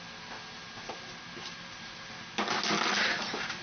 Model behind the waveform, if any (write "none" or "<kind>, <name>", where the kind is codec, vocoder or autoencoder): none